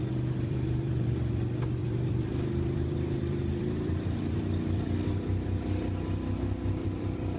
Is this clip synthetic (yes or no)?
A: yes